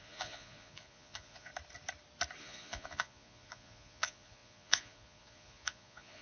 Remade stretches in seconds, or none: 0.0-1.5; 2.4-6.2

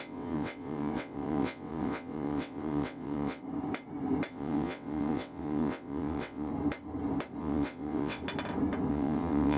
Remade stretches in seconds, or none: 0.0-3.4; 4.3-6.5; 7.4-8.2; 8.9-9.6

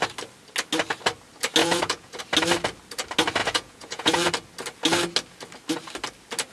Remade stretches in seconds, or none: 1.6-2.2; 3.4-4.3

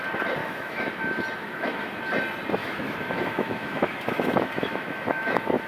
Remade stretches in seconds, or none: 0.4-1.0; 1.4-2.0; 2.6-5.7

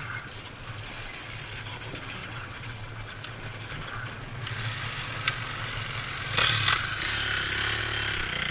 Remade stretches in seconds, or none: 2.2-2.9

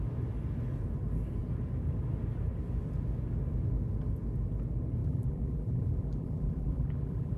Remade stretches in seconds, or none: 5.0-7.4

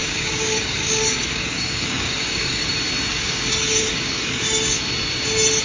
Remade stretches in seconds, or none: 0.0-2.7; 3.1-4.8